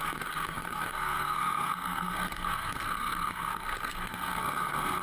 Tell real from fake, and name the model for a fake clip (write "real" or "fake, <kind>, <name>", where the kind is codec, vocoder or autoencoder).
fake, codec, SNAC